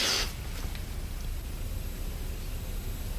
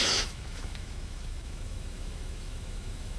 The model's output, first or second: second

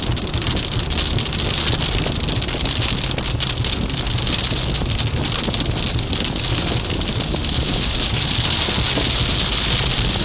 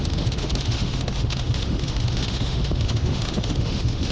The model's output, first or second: second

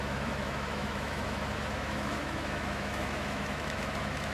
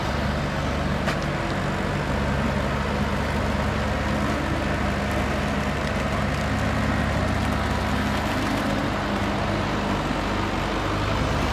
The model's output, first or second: first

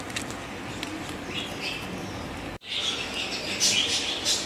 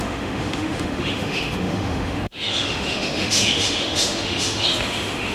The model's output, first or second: second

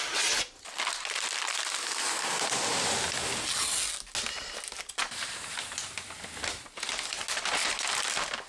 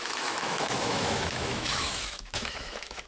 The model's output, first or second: second